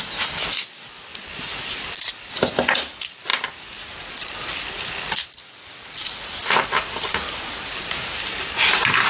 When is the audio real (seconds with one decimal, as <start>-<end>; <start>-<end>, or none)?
0.0-9.1